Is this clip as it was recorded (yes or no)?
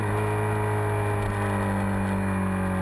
yes